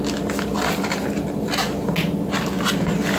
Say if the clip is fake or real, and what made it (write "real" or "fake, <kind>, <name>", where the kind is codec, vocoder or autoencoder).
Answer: real